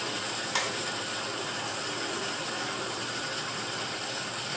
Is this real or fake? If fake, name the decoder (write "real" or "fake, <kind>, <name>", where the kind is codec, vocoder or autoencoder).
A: real